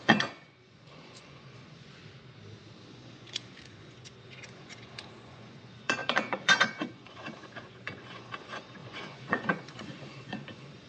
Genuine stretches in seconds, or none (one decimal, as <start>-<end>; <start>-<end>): 2.0-2.9